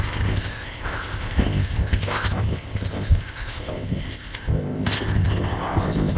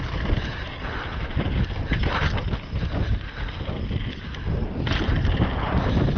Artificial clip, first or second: first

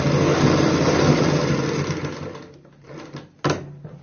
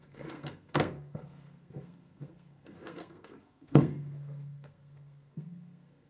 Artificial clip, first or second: second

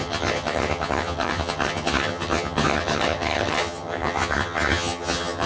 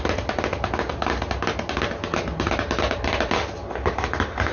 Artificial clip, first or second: first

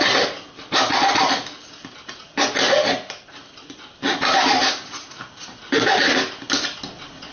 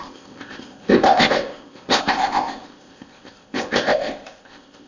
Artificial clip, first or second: second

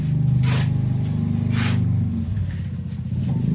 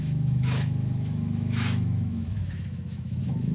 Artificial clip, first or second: second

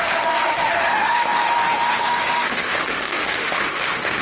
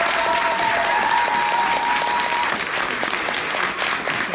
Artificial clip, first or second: first